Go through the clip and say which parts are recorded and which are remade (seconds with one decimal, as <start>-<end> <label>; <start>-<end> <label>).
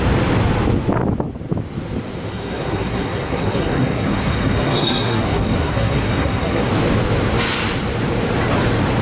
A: 0.0-2.3 recorded; 2.3-6.7 remade; 6.7-9.0 recorded